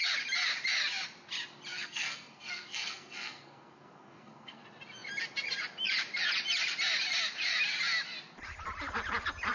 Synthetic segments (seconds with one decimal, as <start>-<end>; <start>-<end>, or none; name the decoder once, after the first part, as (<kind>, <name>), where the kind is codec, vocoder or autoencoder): 1.7-4.6 (codec, SNAC)